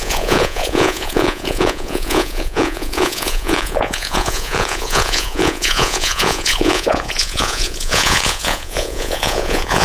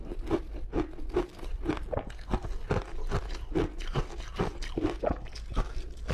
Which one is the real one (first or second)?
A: second